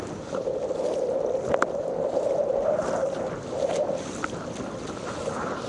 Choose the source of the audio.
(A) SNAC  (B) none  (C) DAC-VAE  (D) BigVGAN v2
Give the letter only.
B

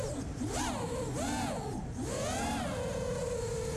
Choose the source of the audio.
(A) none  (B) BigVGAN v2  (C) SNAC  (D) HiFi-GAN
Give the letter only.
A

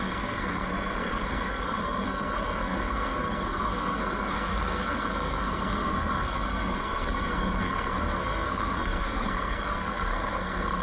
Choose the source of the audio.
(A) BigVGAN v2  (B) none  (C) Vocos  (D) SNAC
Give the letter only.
D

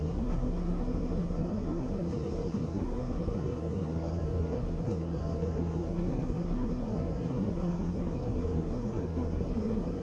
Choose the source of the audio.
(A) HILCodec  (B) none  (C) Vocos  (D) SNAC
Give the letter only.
D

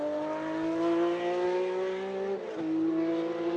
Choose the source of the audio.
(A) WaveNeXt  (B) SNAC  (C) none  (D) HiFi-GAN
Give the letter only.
C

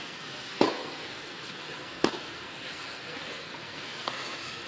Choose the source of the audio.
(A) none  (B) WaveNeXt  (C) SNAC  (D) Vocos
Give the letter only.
C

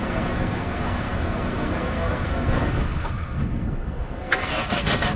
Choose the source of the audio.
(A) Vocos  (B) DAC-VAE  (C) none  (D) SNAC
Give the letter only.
D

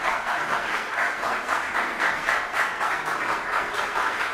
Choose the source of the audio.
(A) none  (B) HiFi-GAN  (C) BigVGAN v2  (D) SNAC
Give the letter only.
D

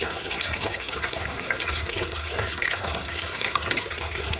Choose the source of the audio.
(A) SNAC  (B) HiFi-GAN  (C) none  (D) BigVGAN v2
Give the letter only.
A